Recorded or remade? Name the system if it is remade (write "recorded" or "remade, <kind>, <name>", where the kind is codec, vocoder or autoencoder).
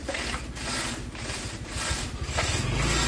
recorded